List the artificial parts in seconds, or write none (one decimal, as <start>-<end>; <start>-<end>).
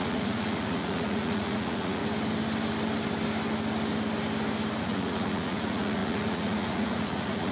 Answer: 0.0-2.0; 4.8-7.5